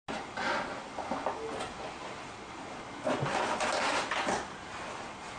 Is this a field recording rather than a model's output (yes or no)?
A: yes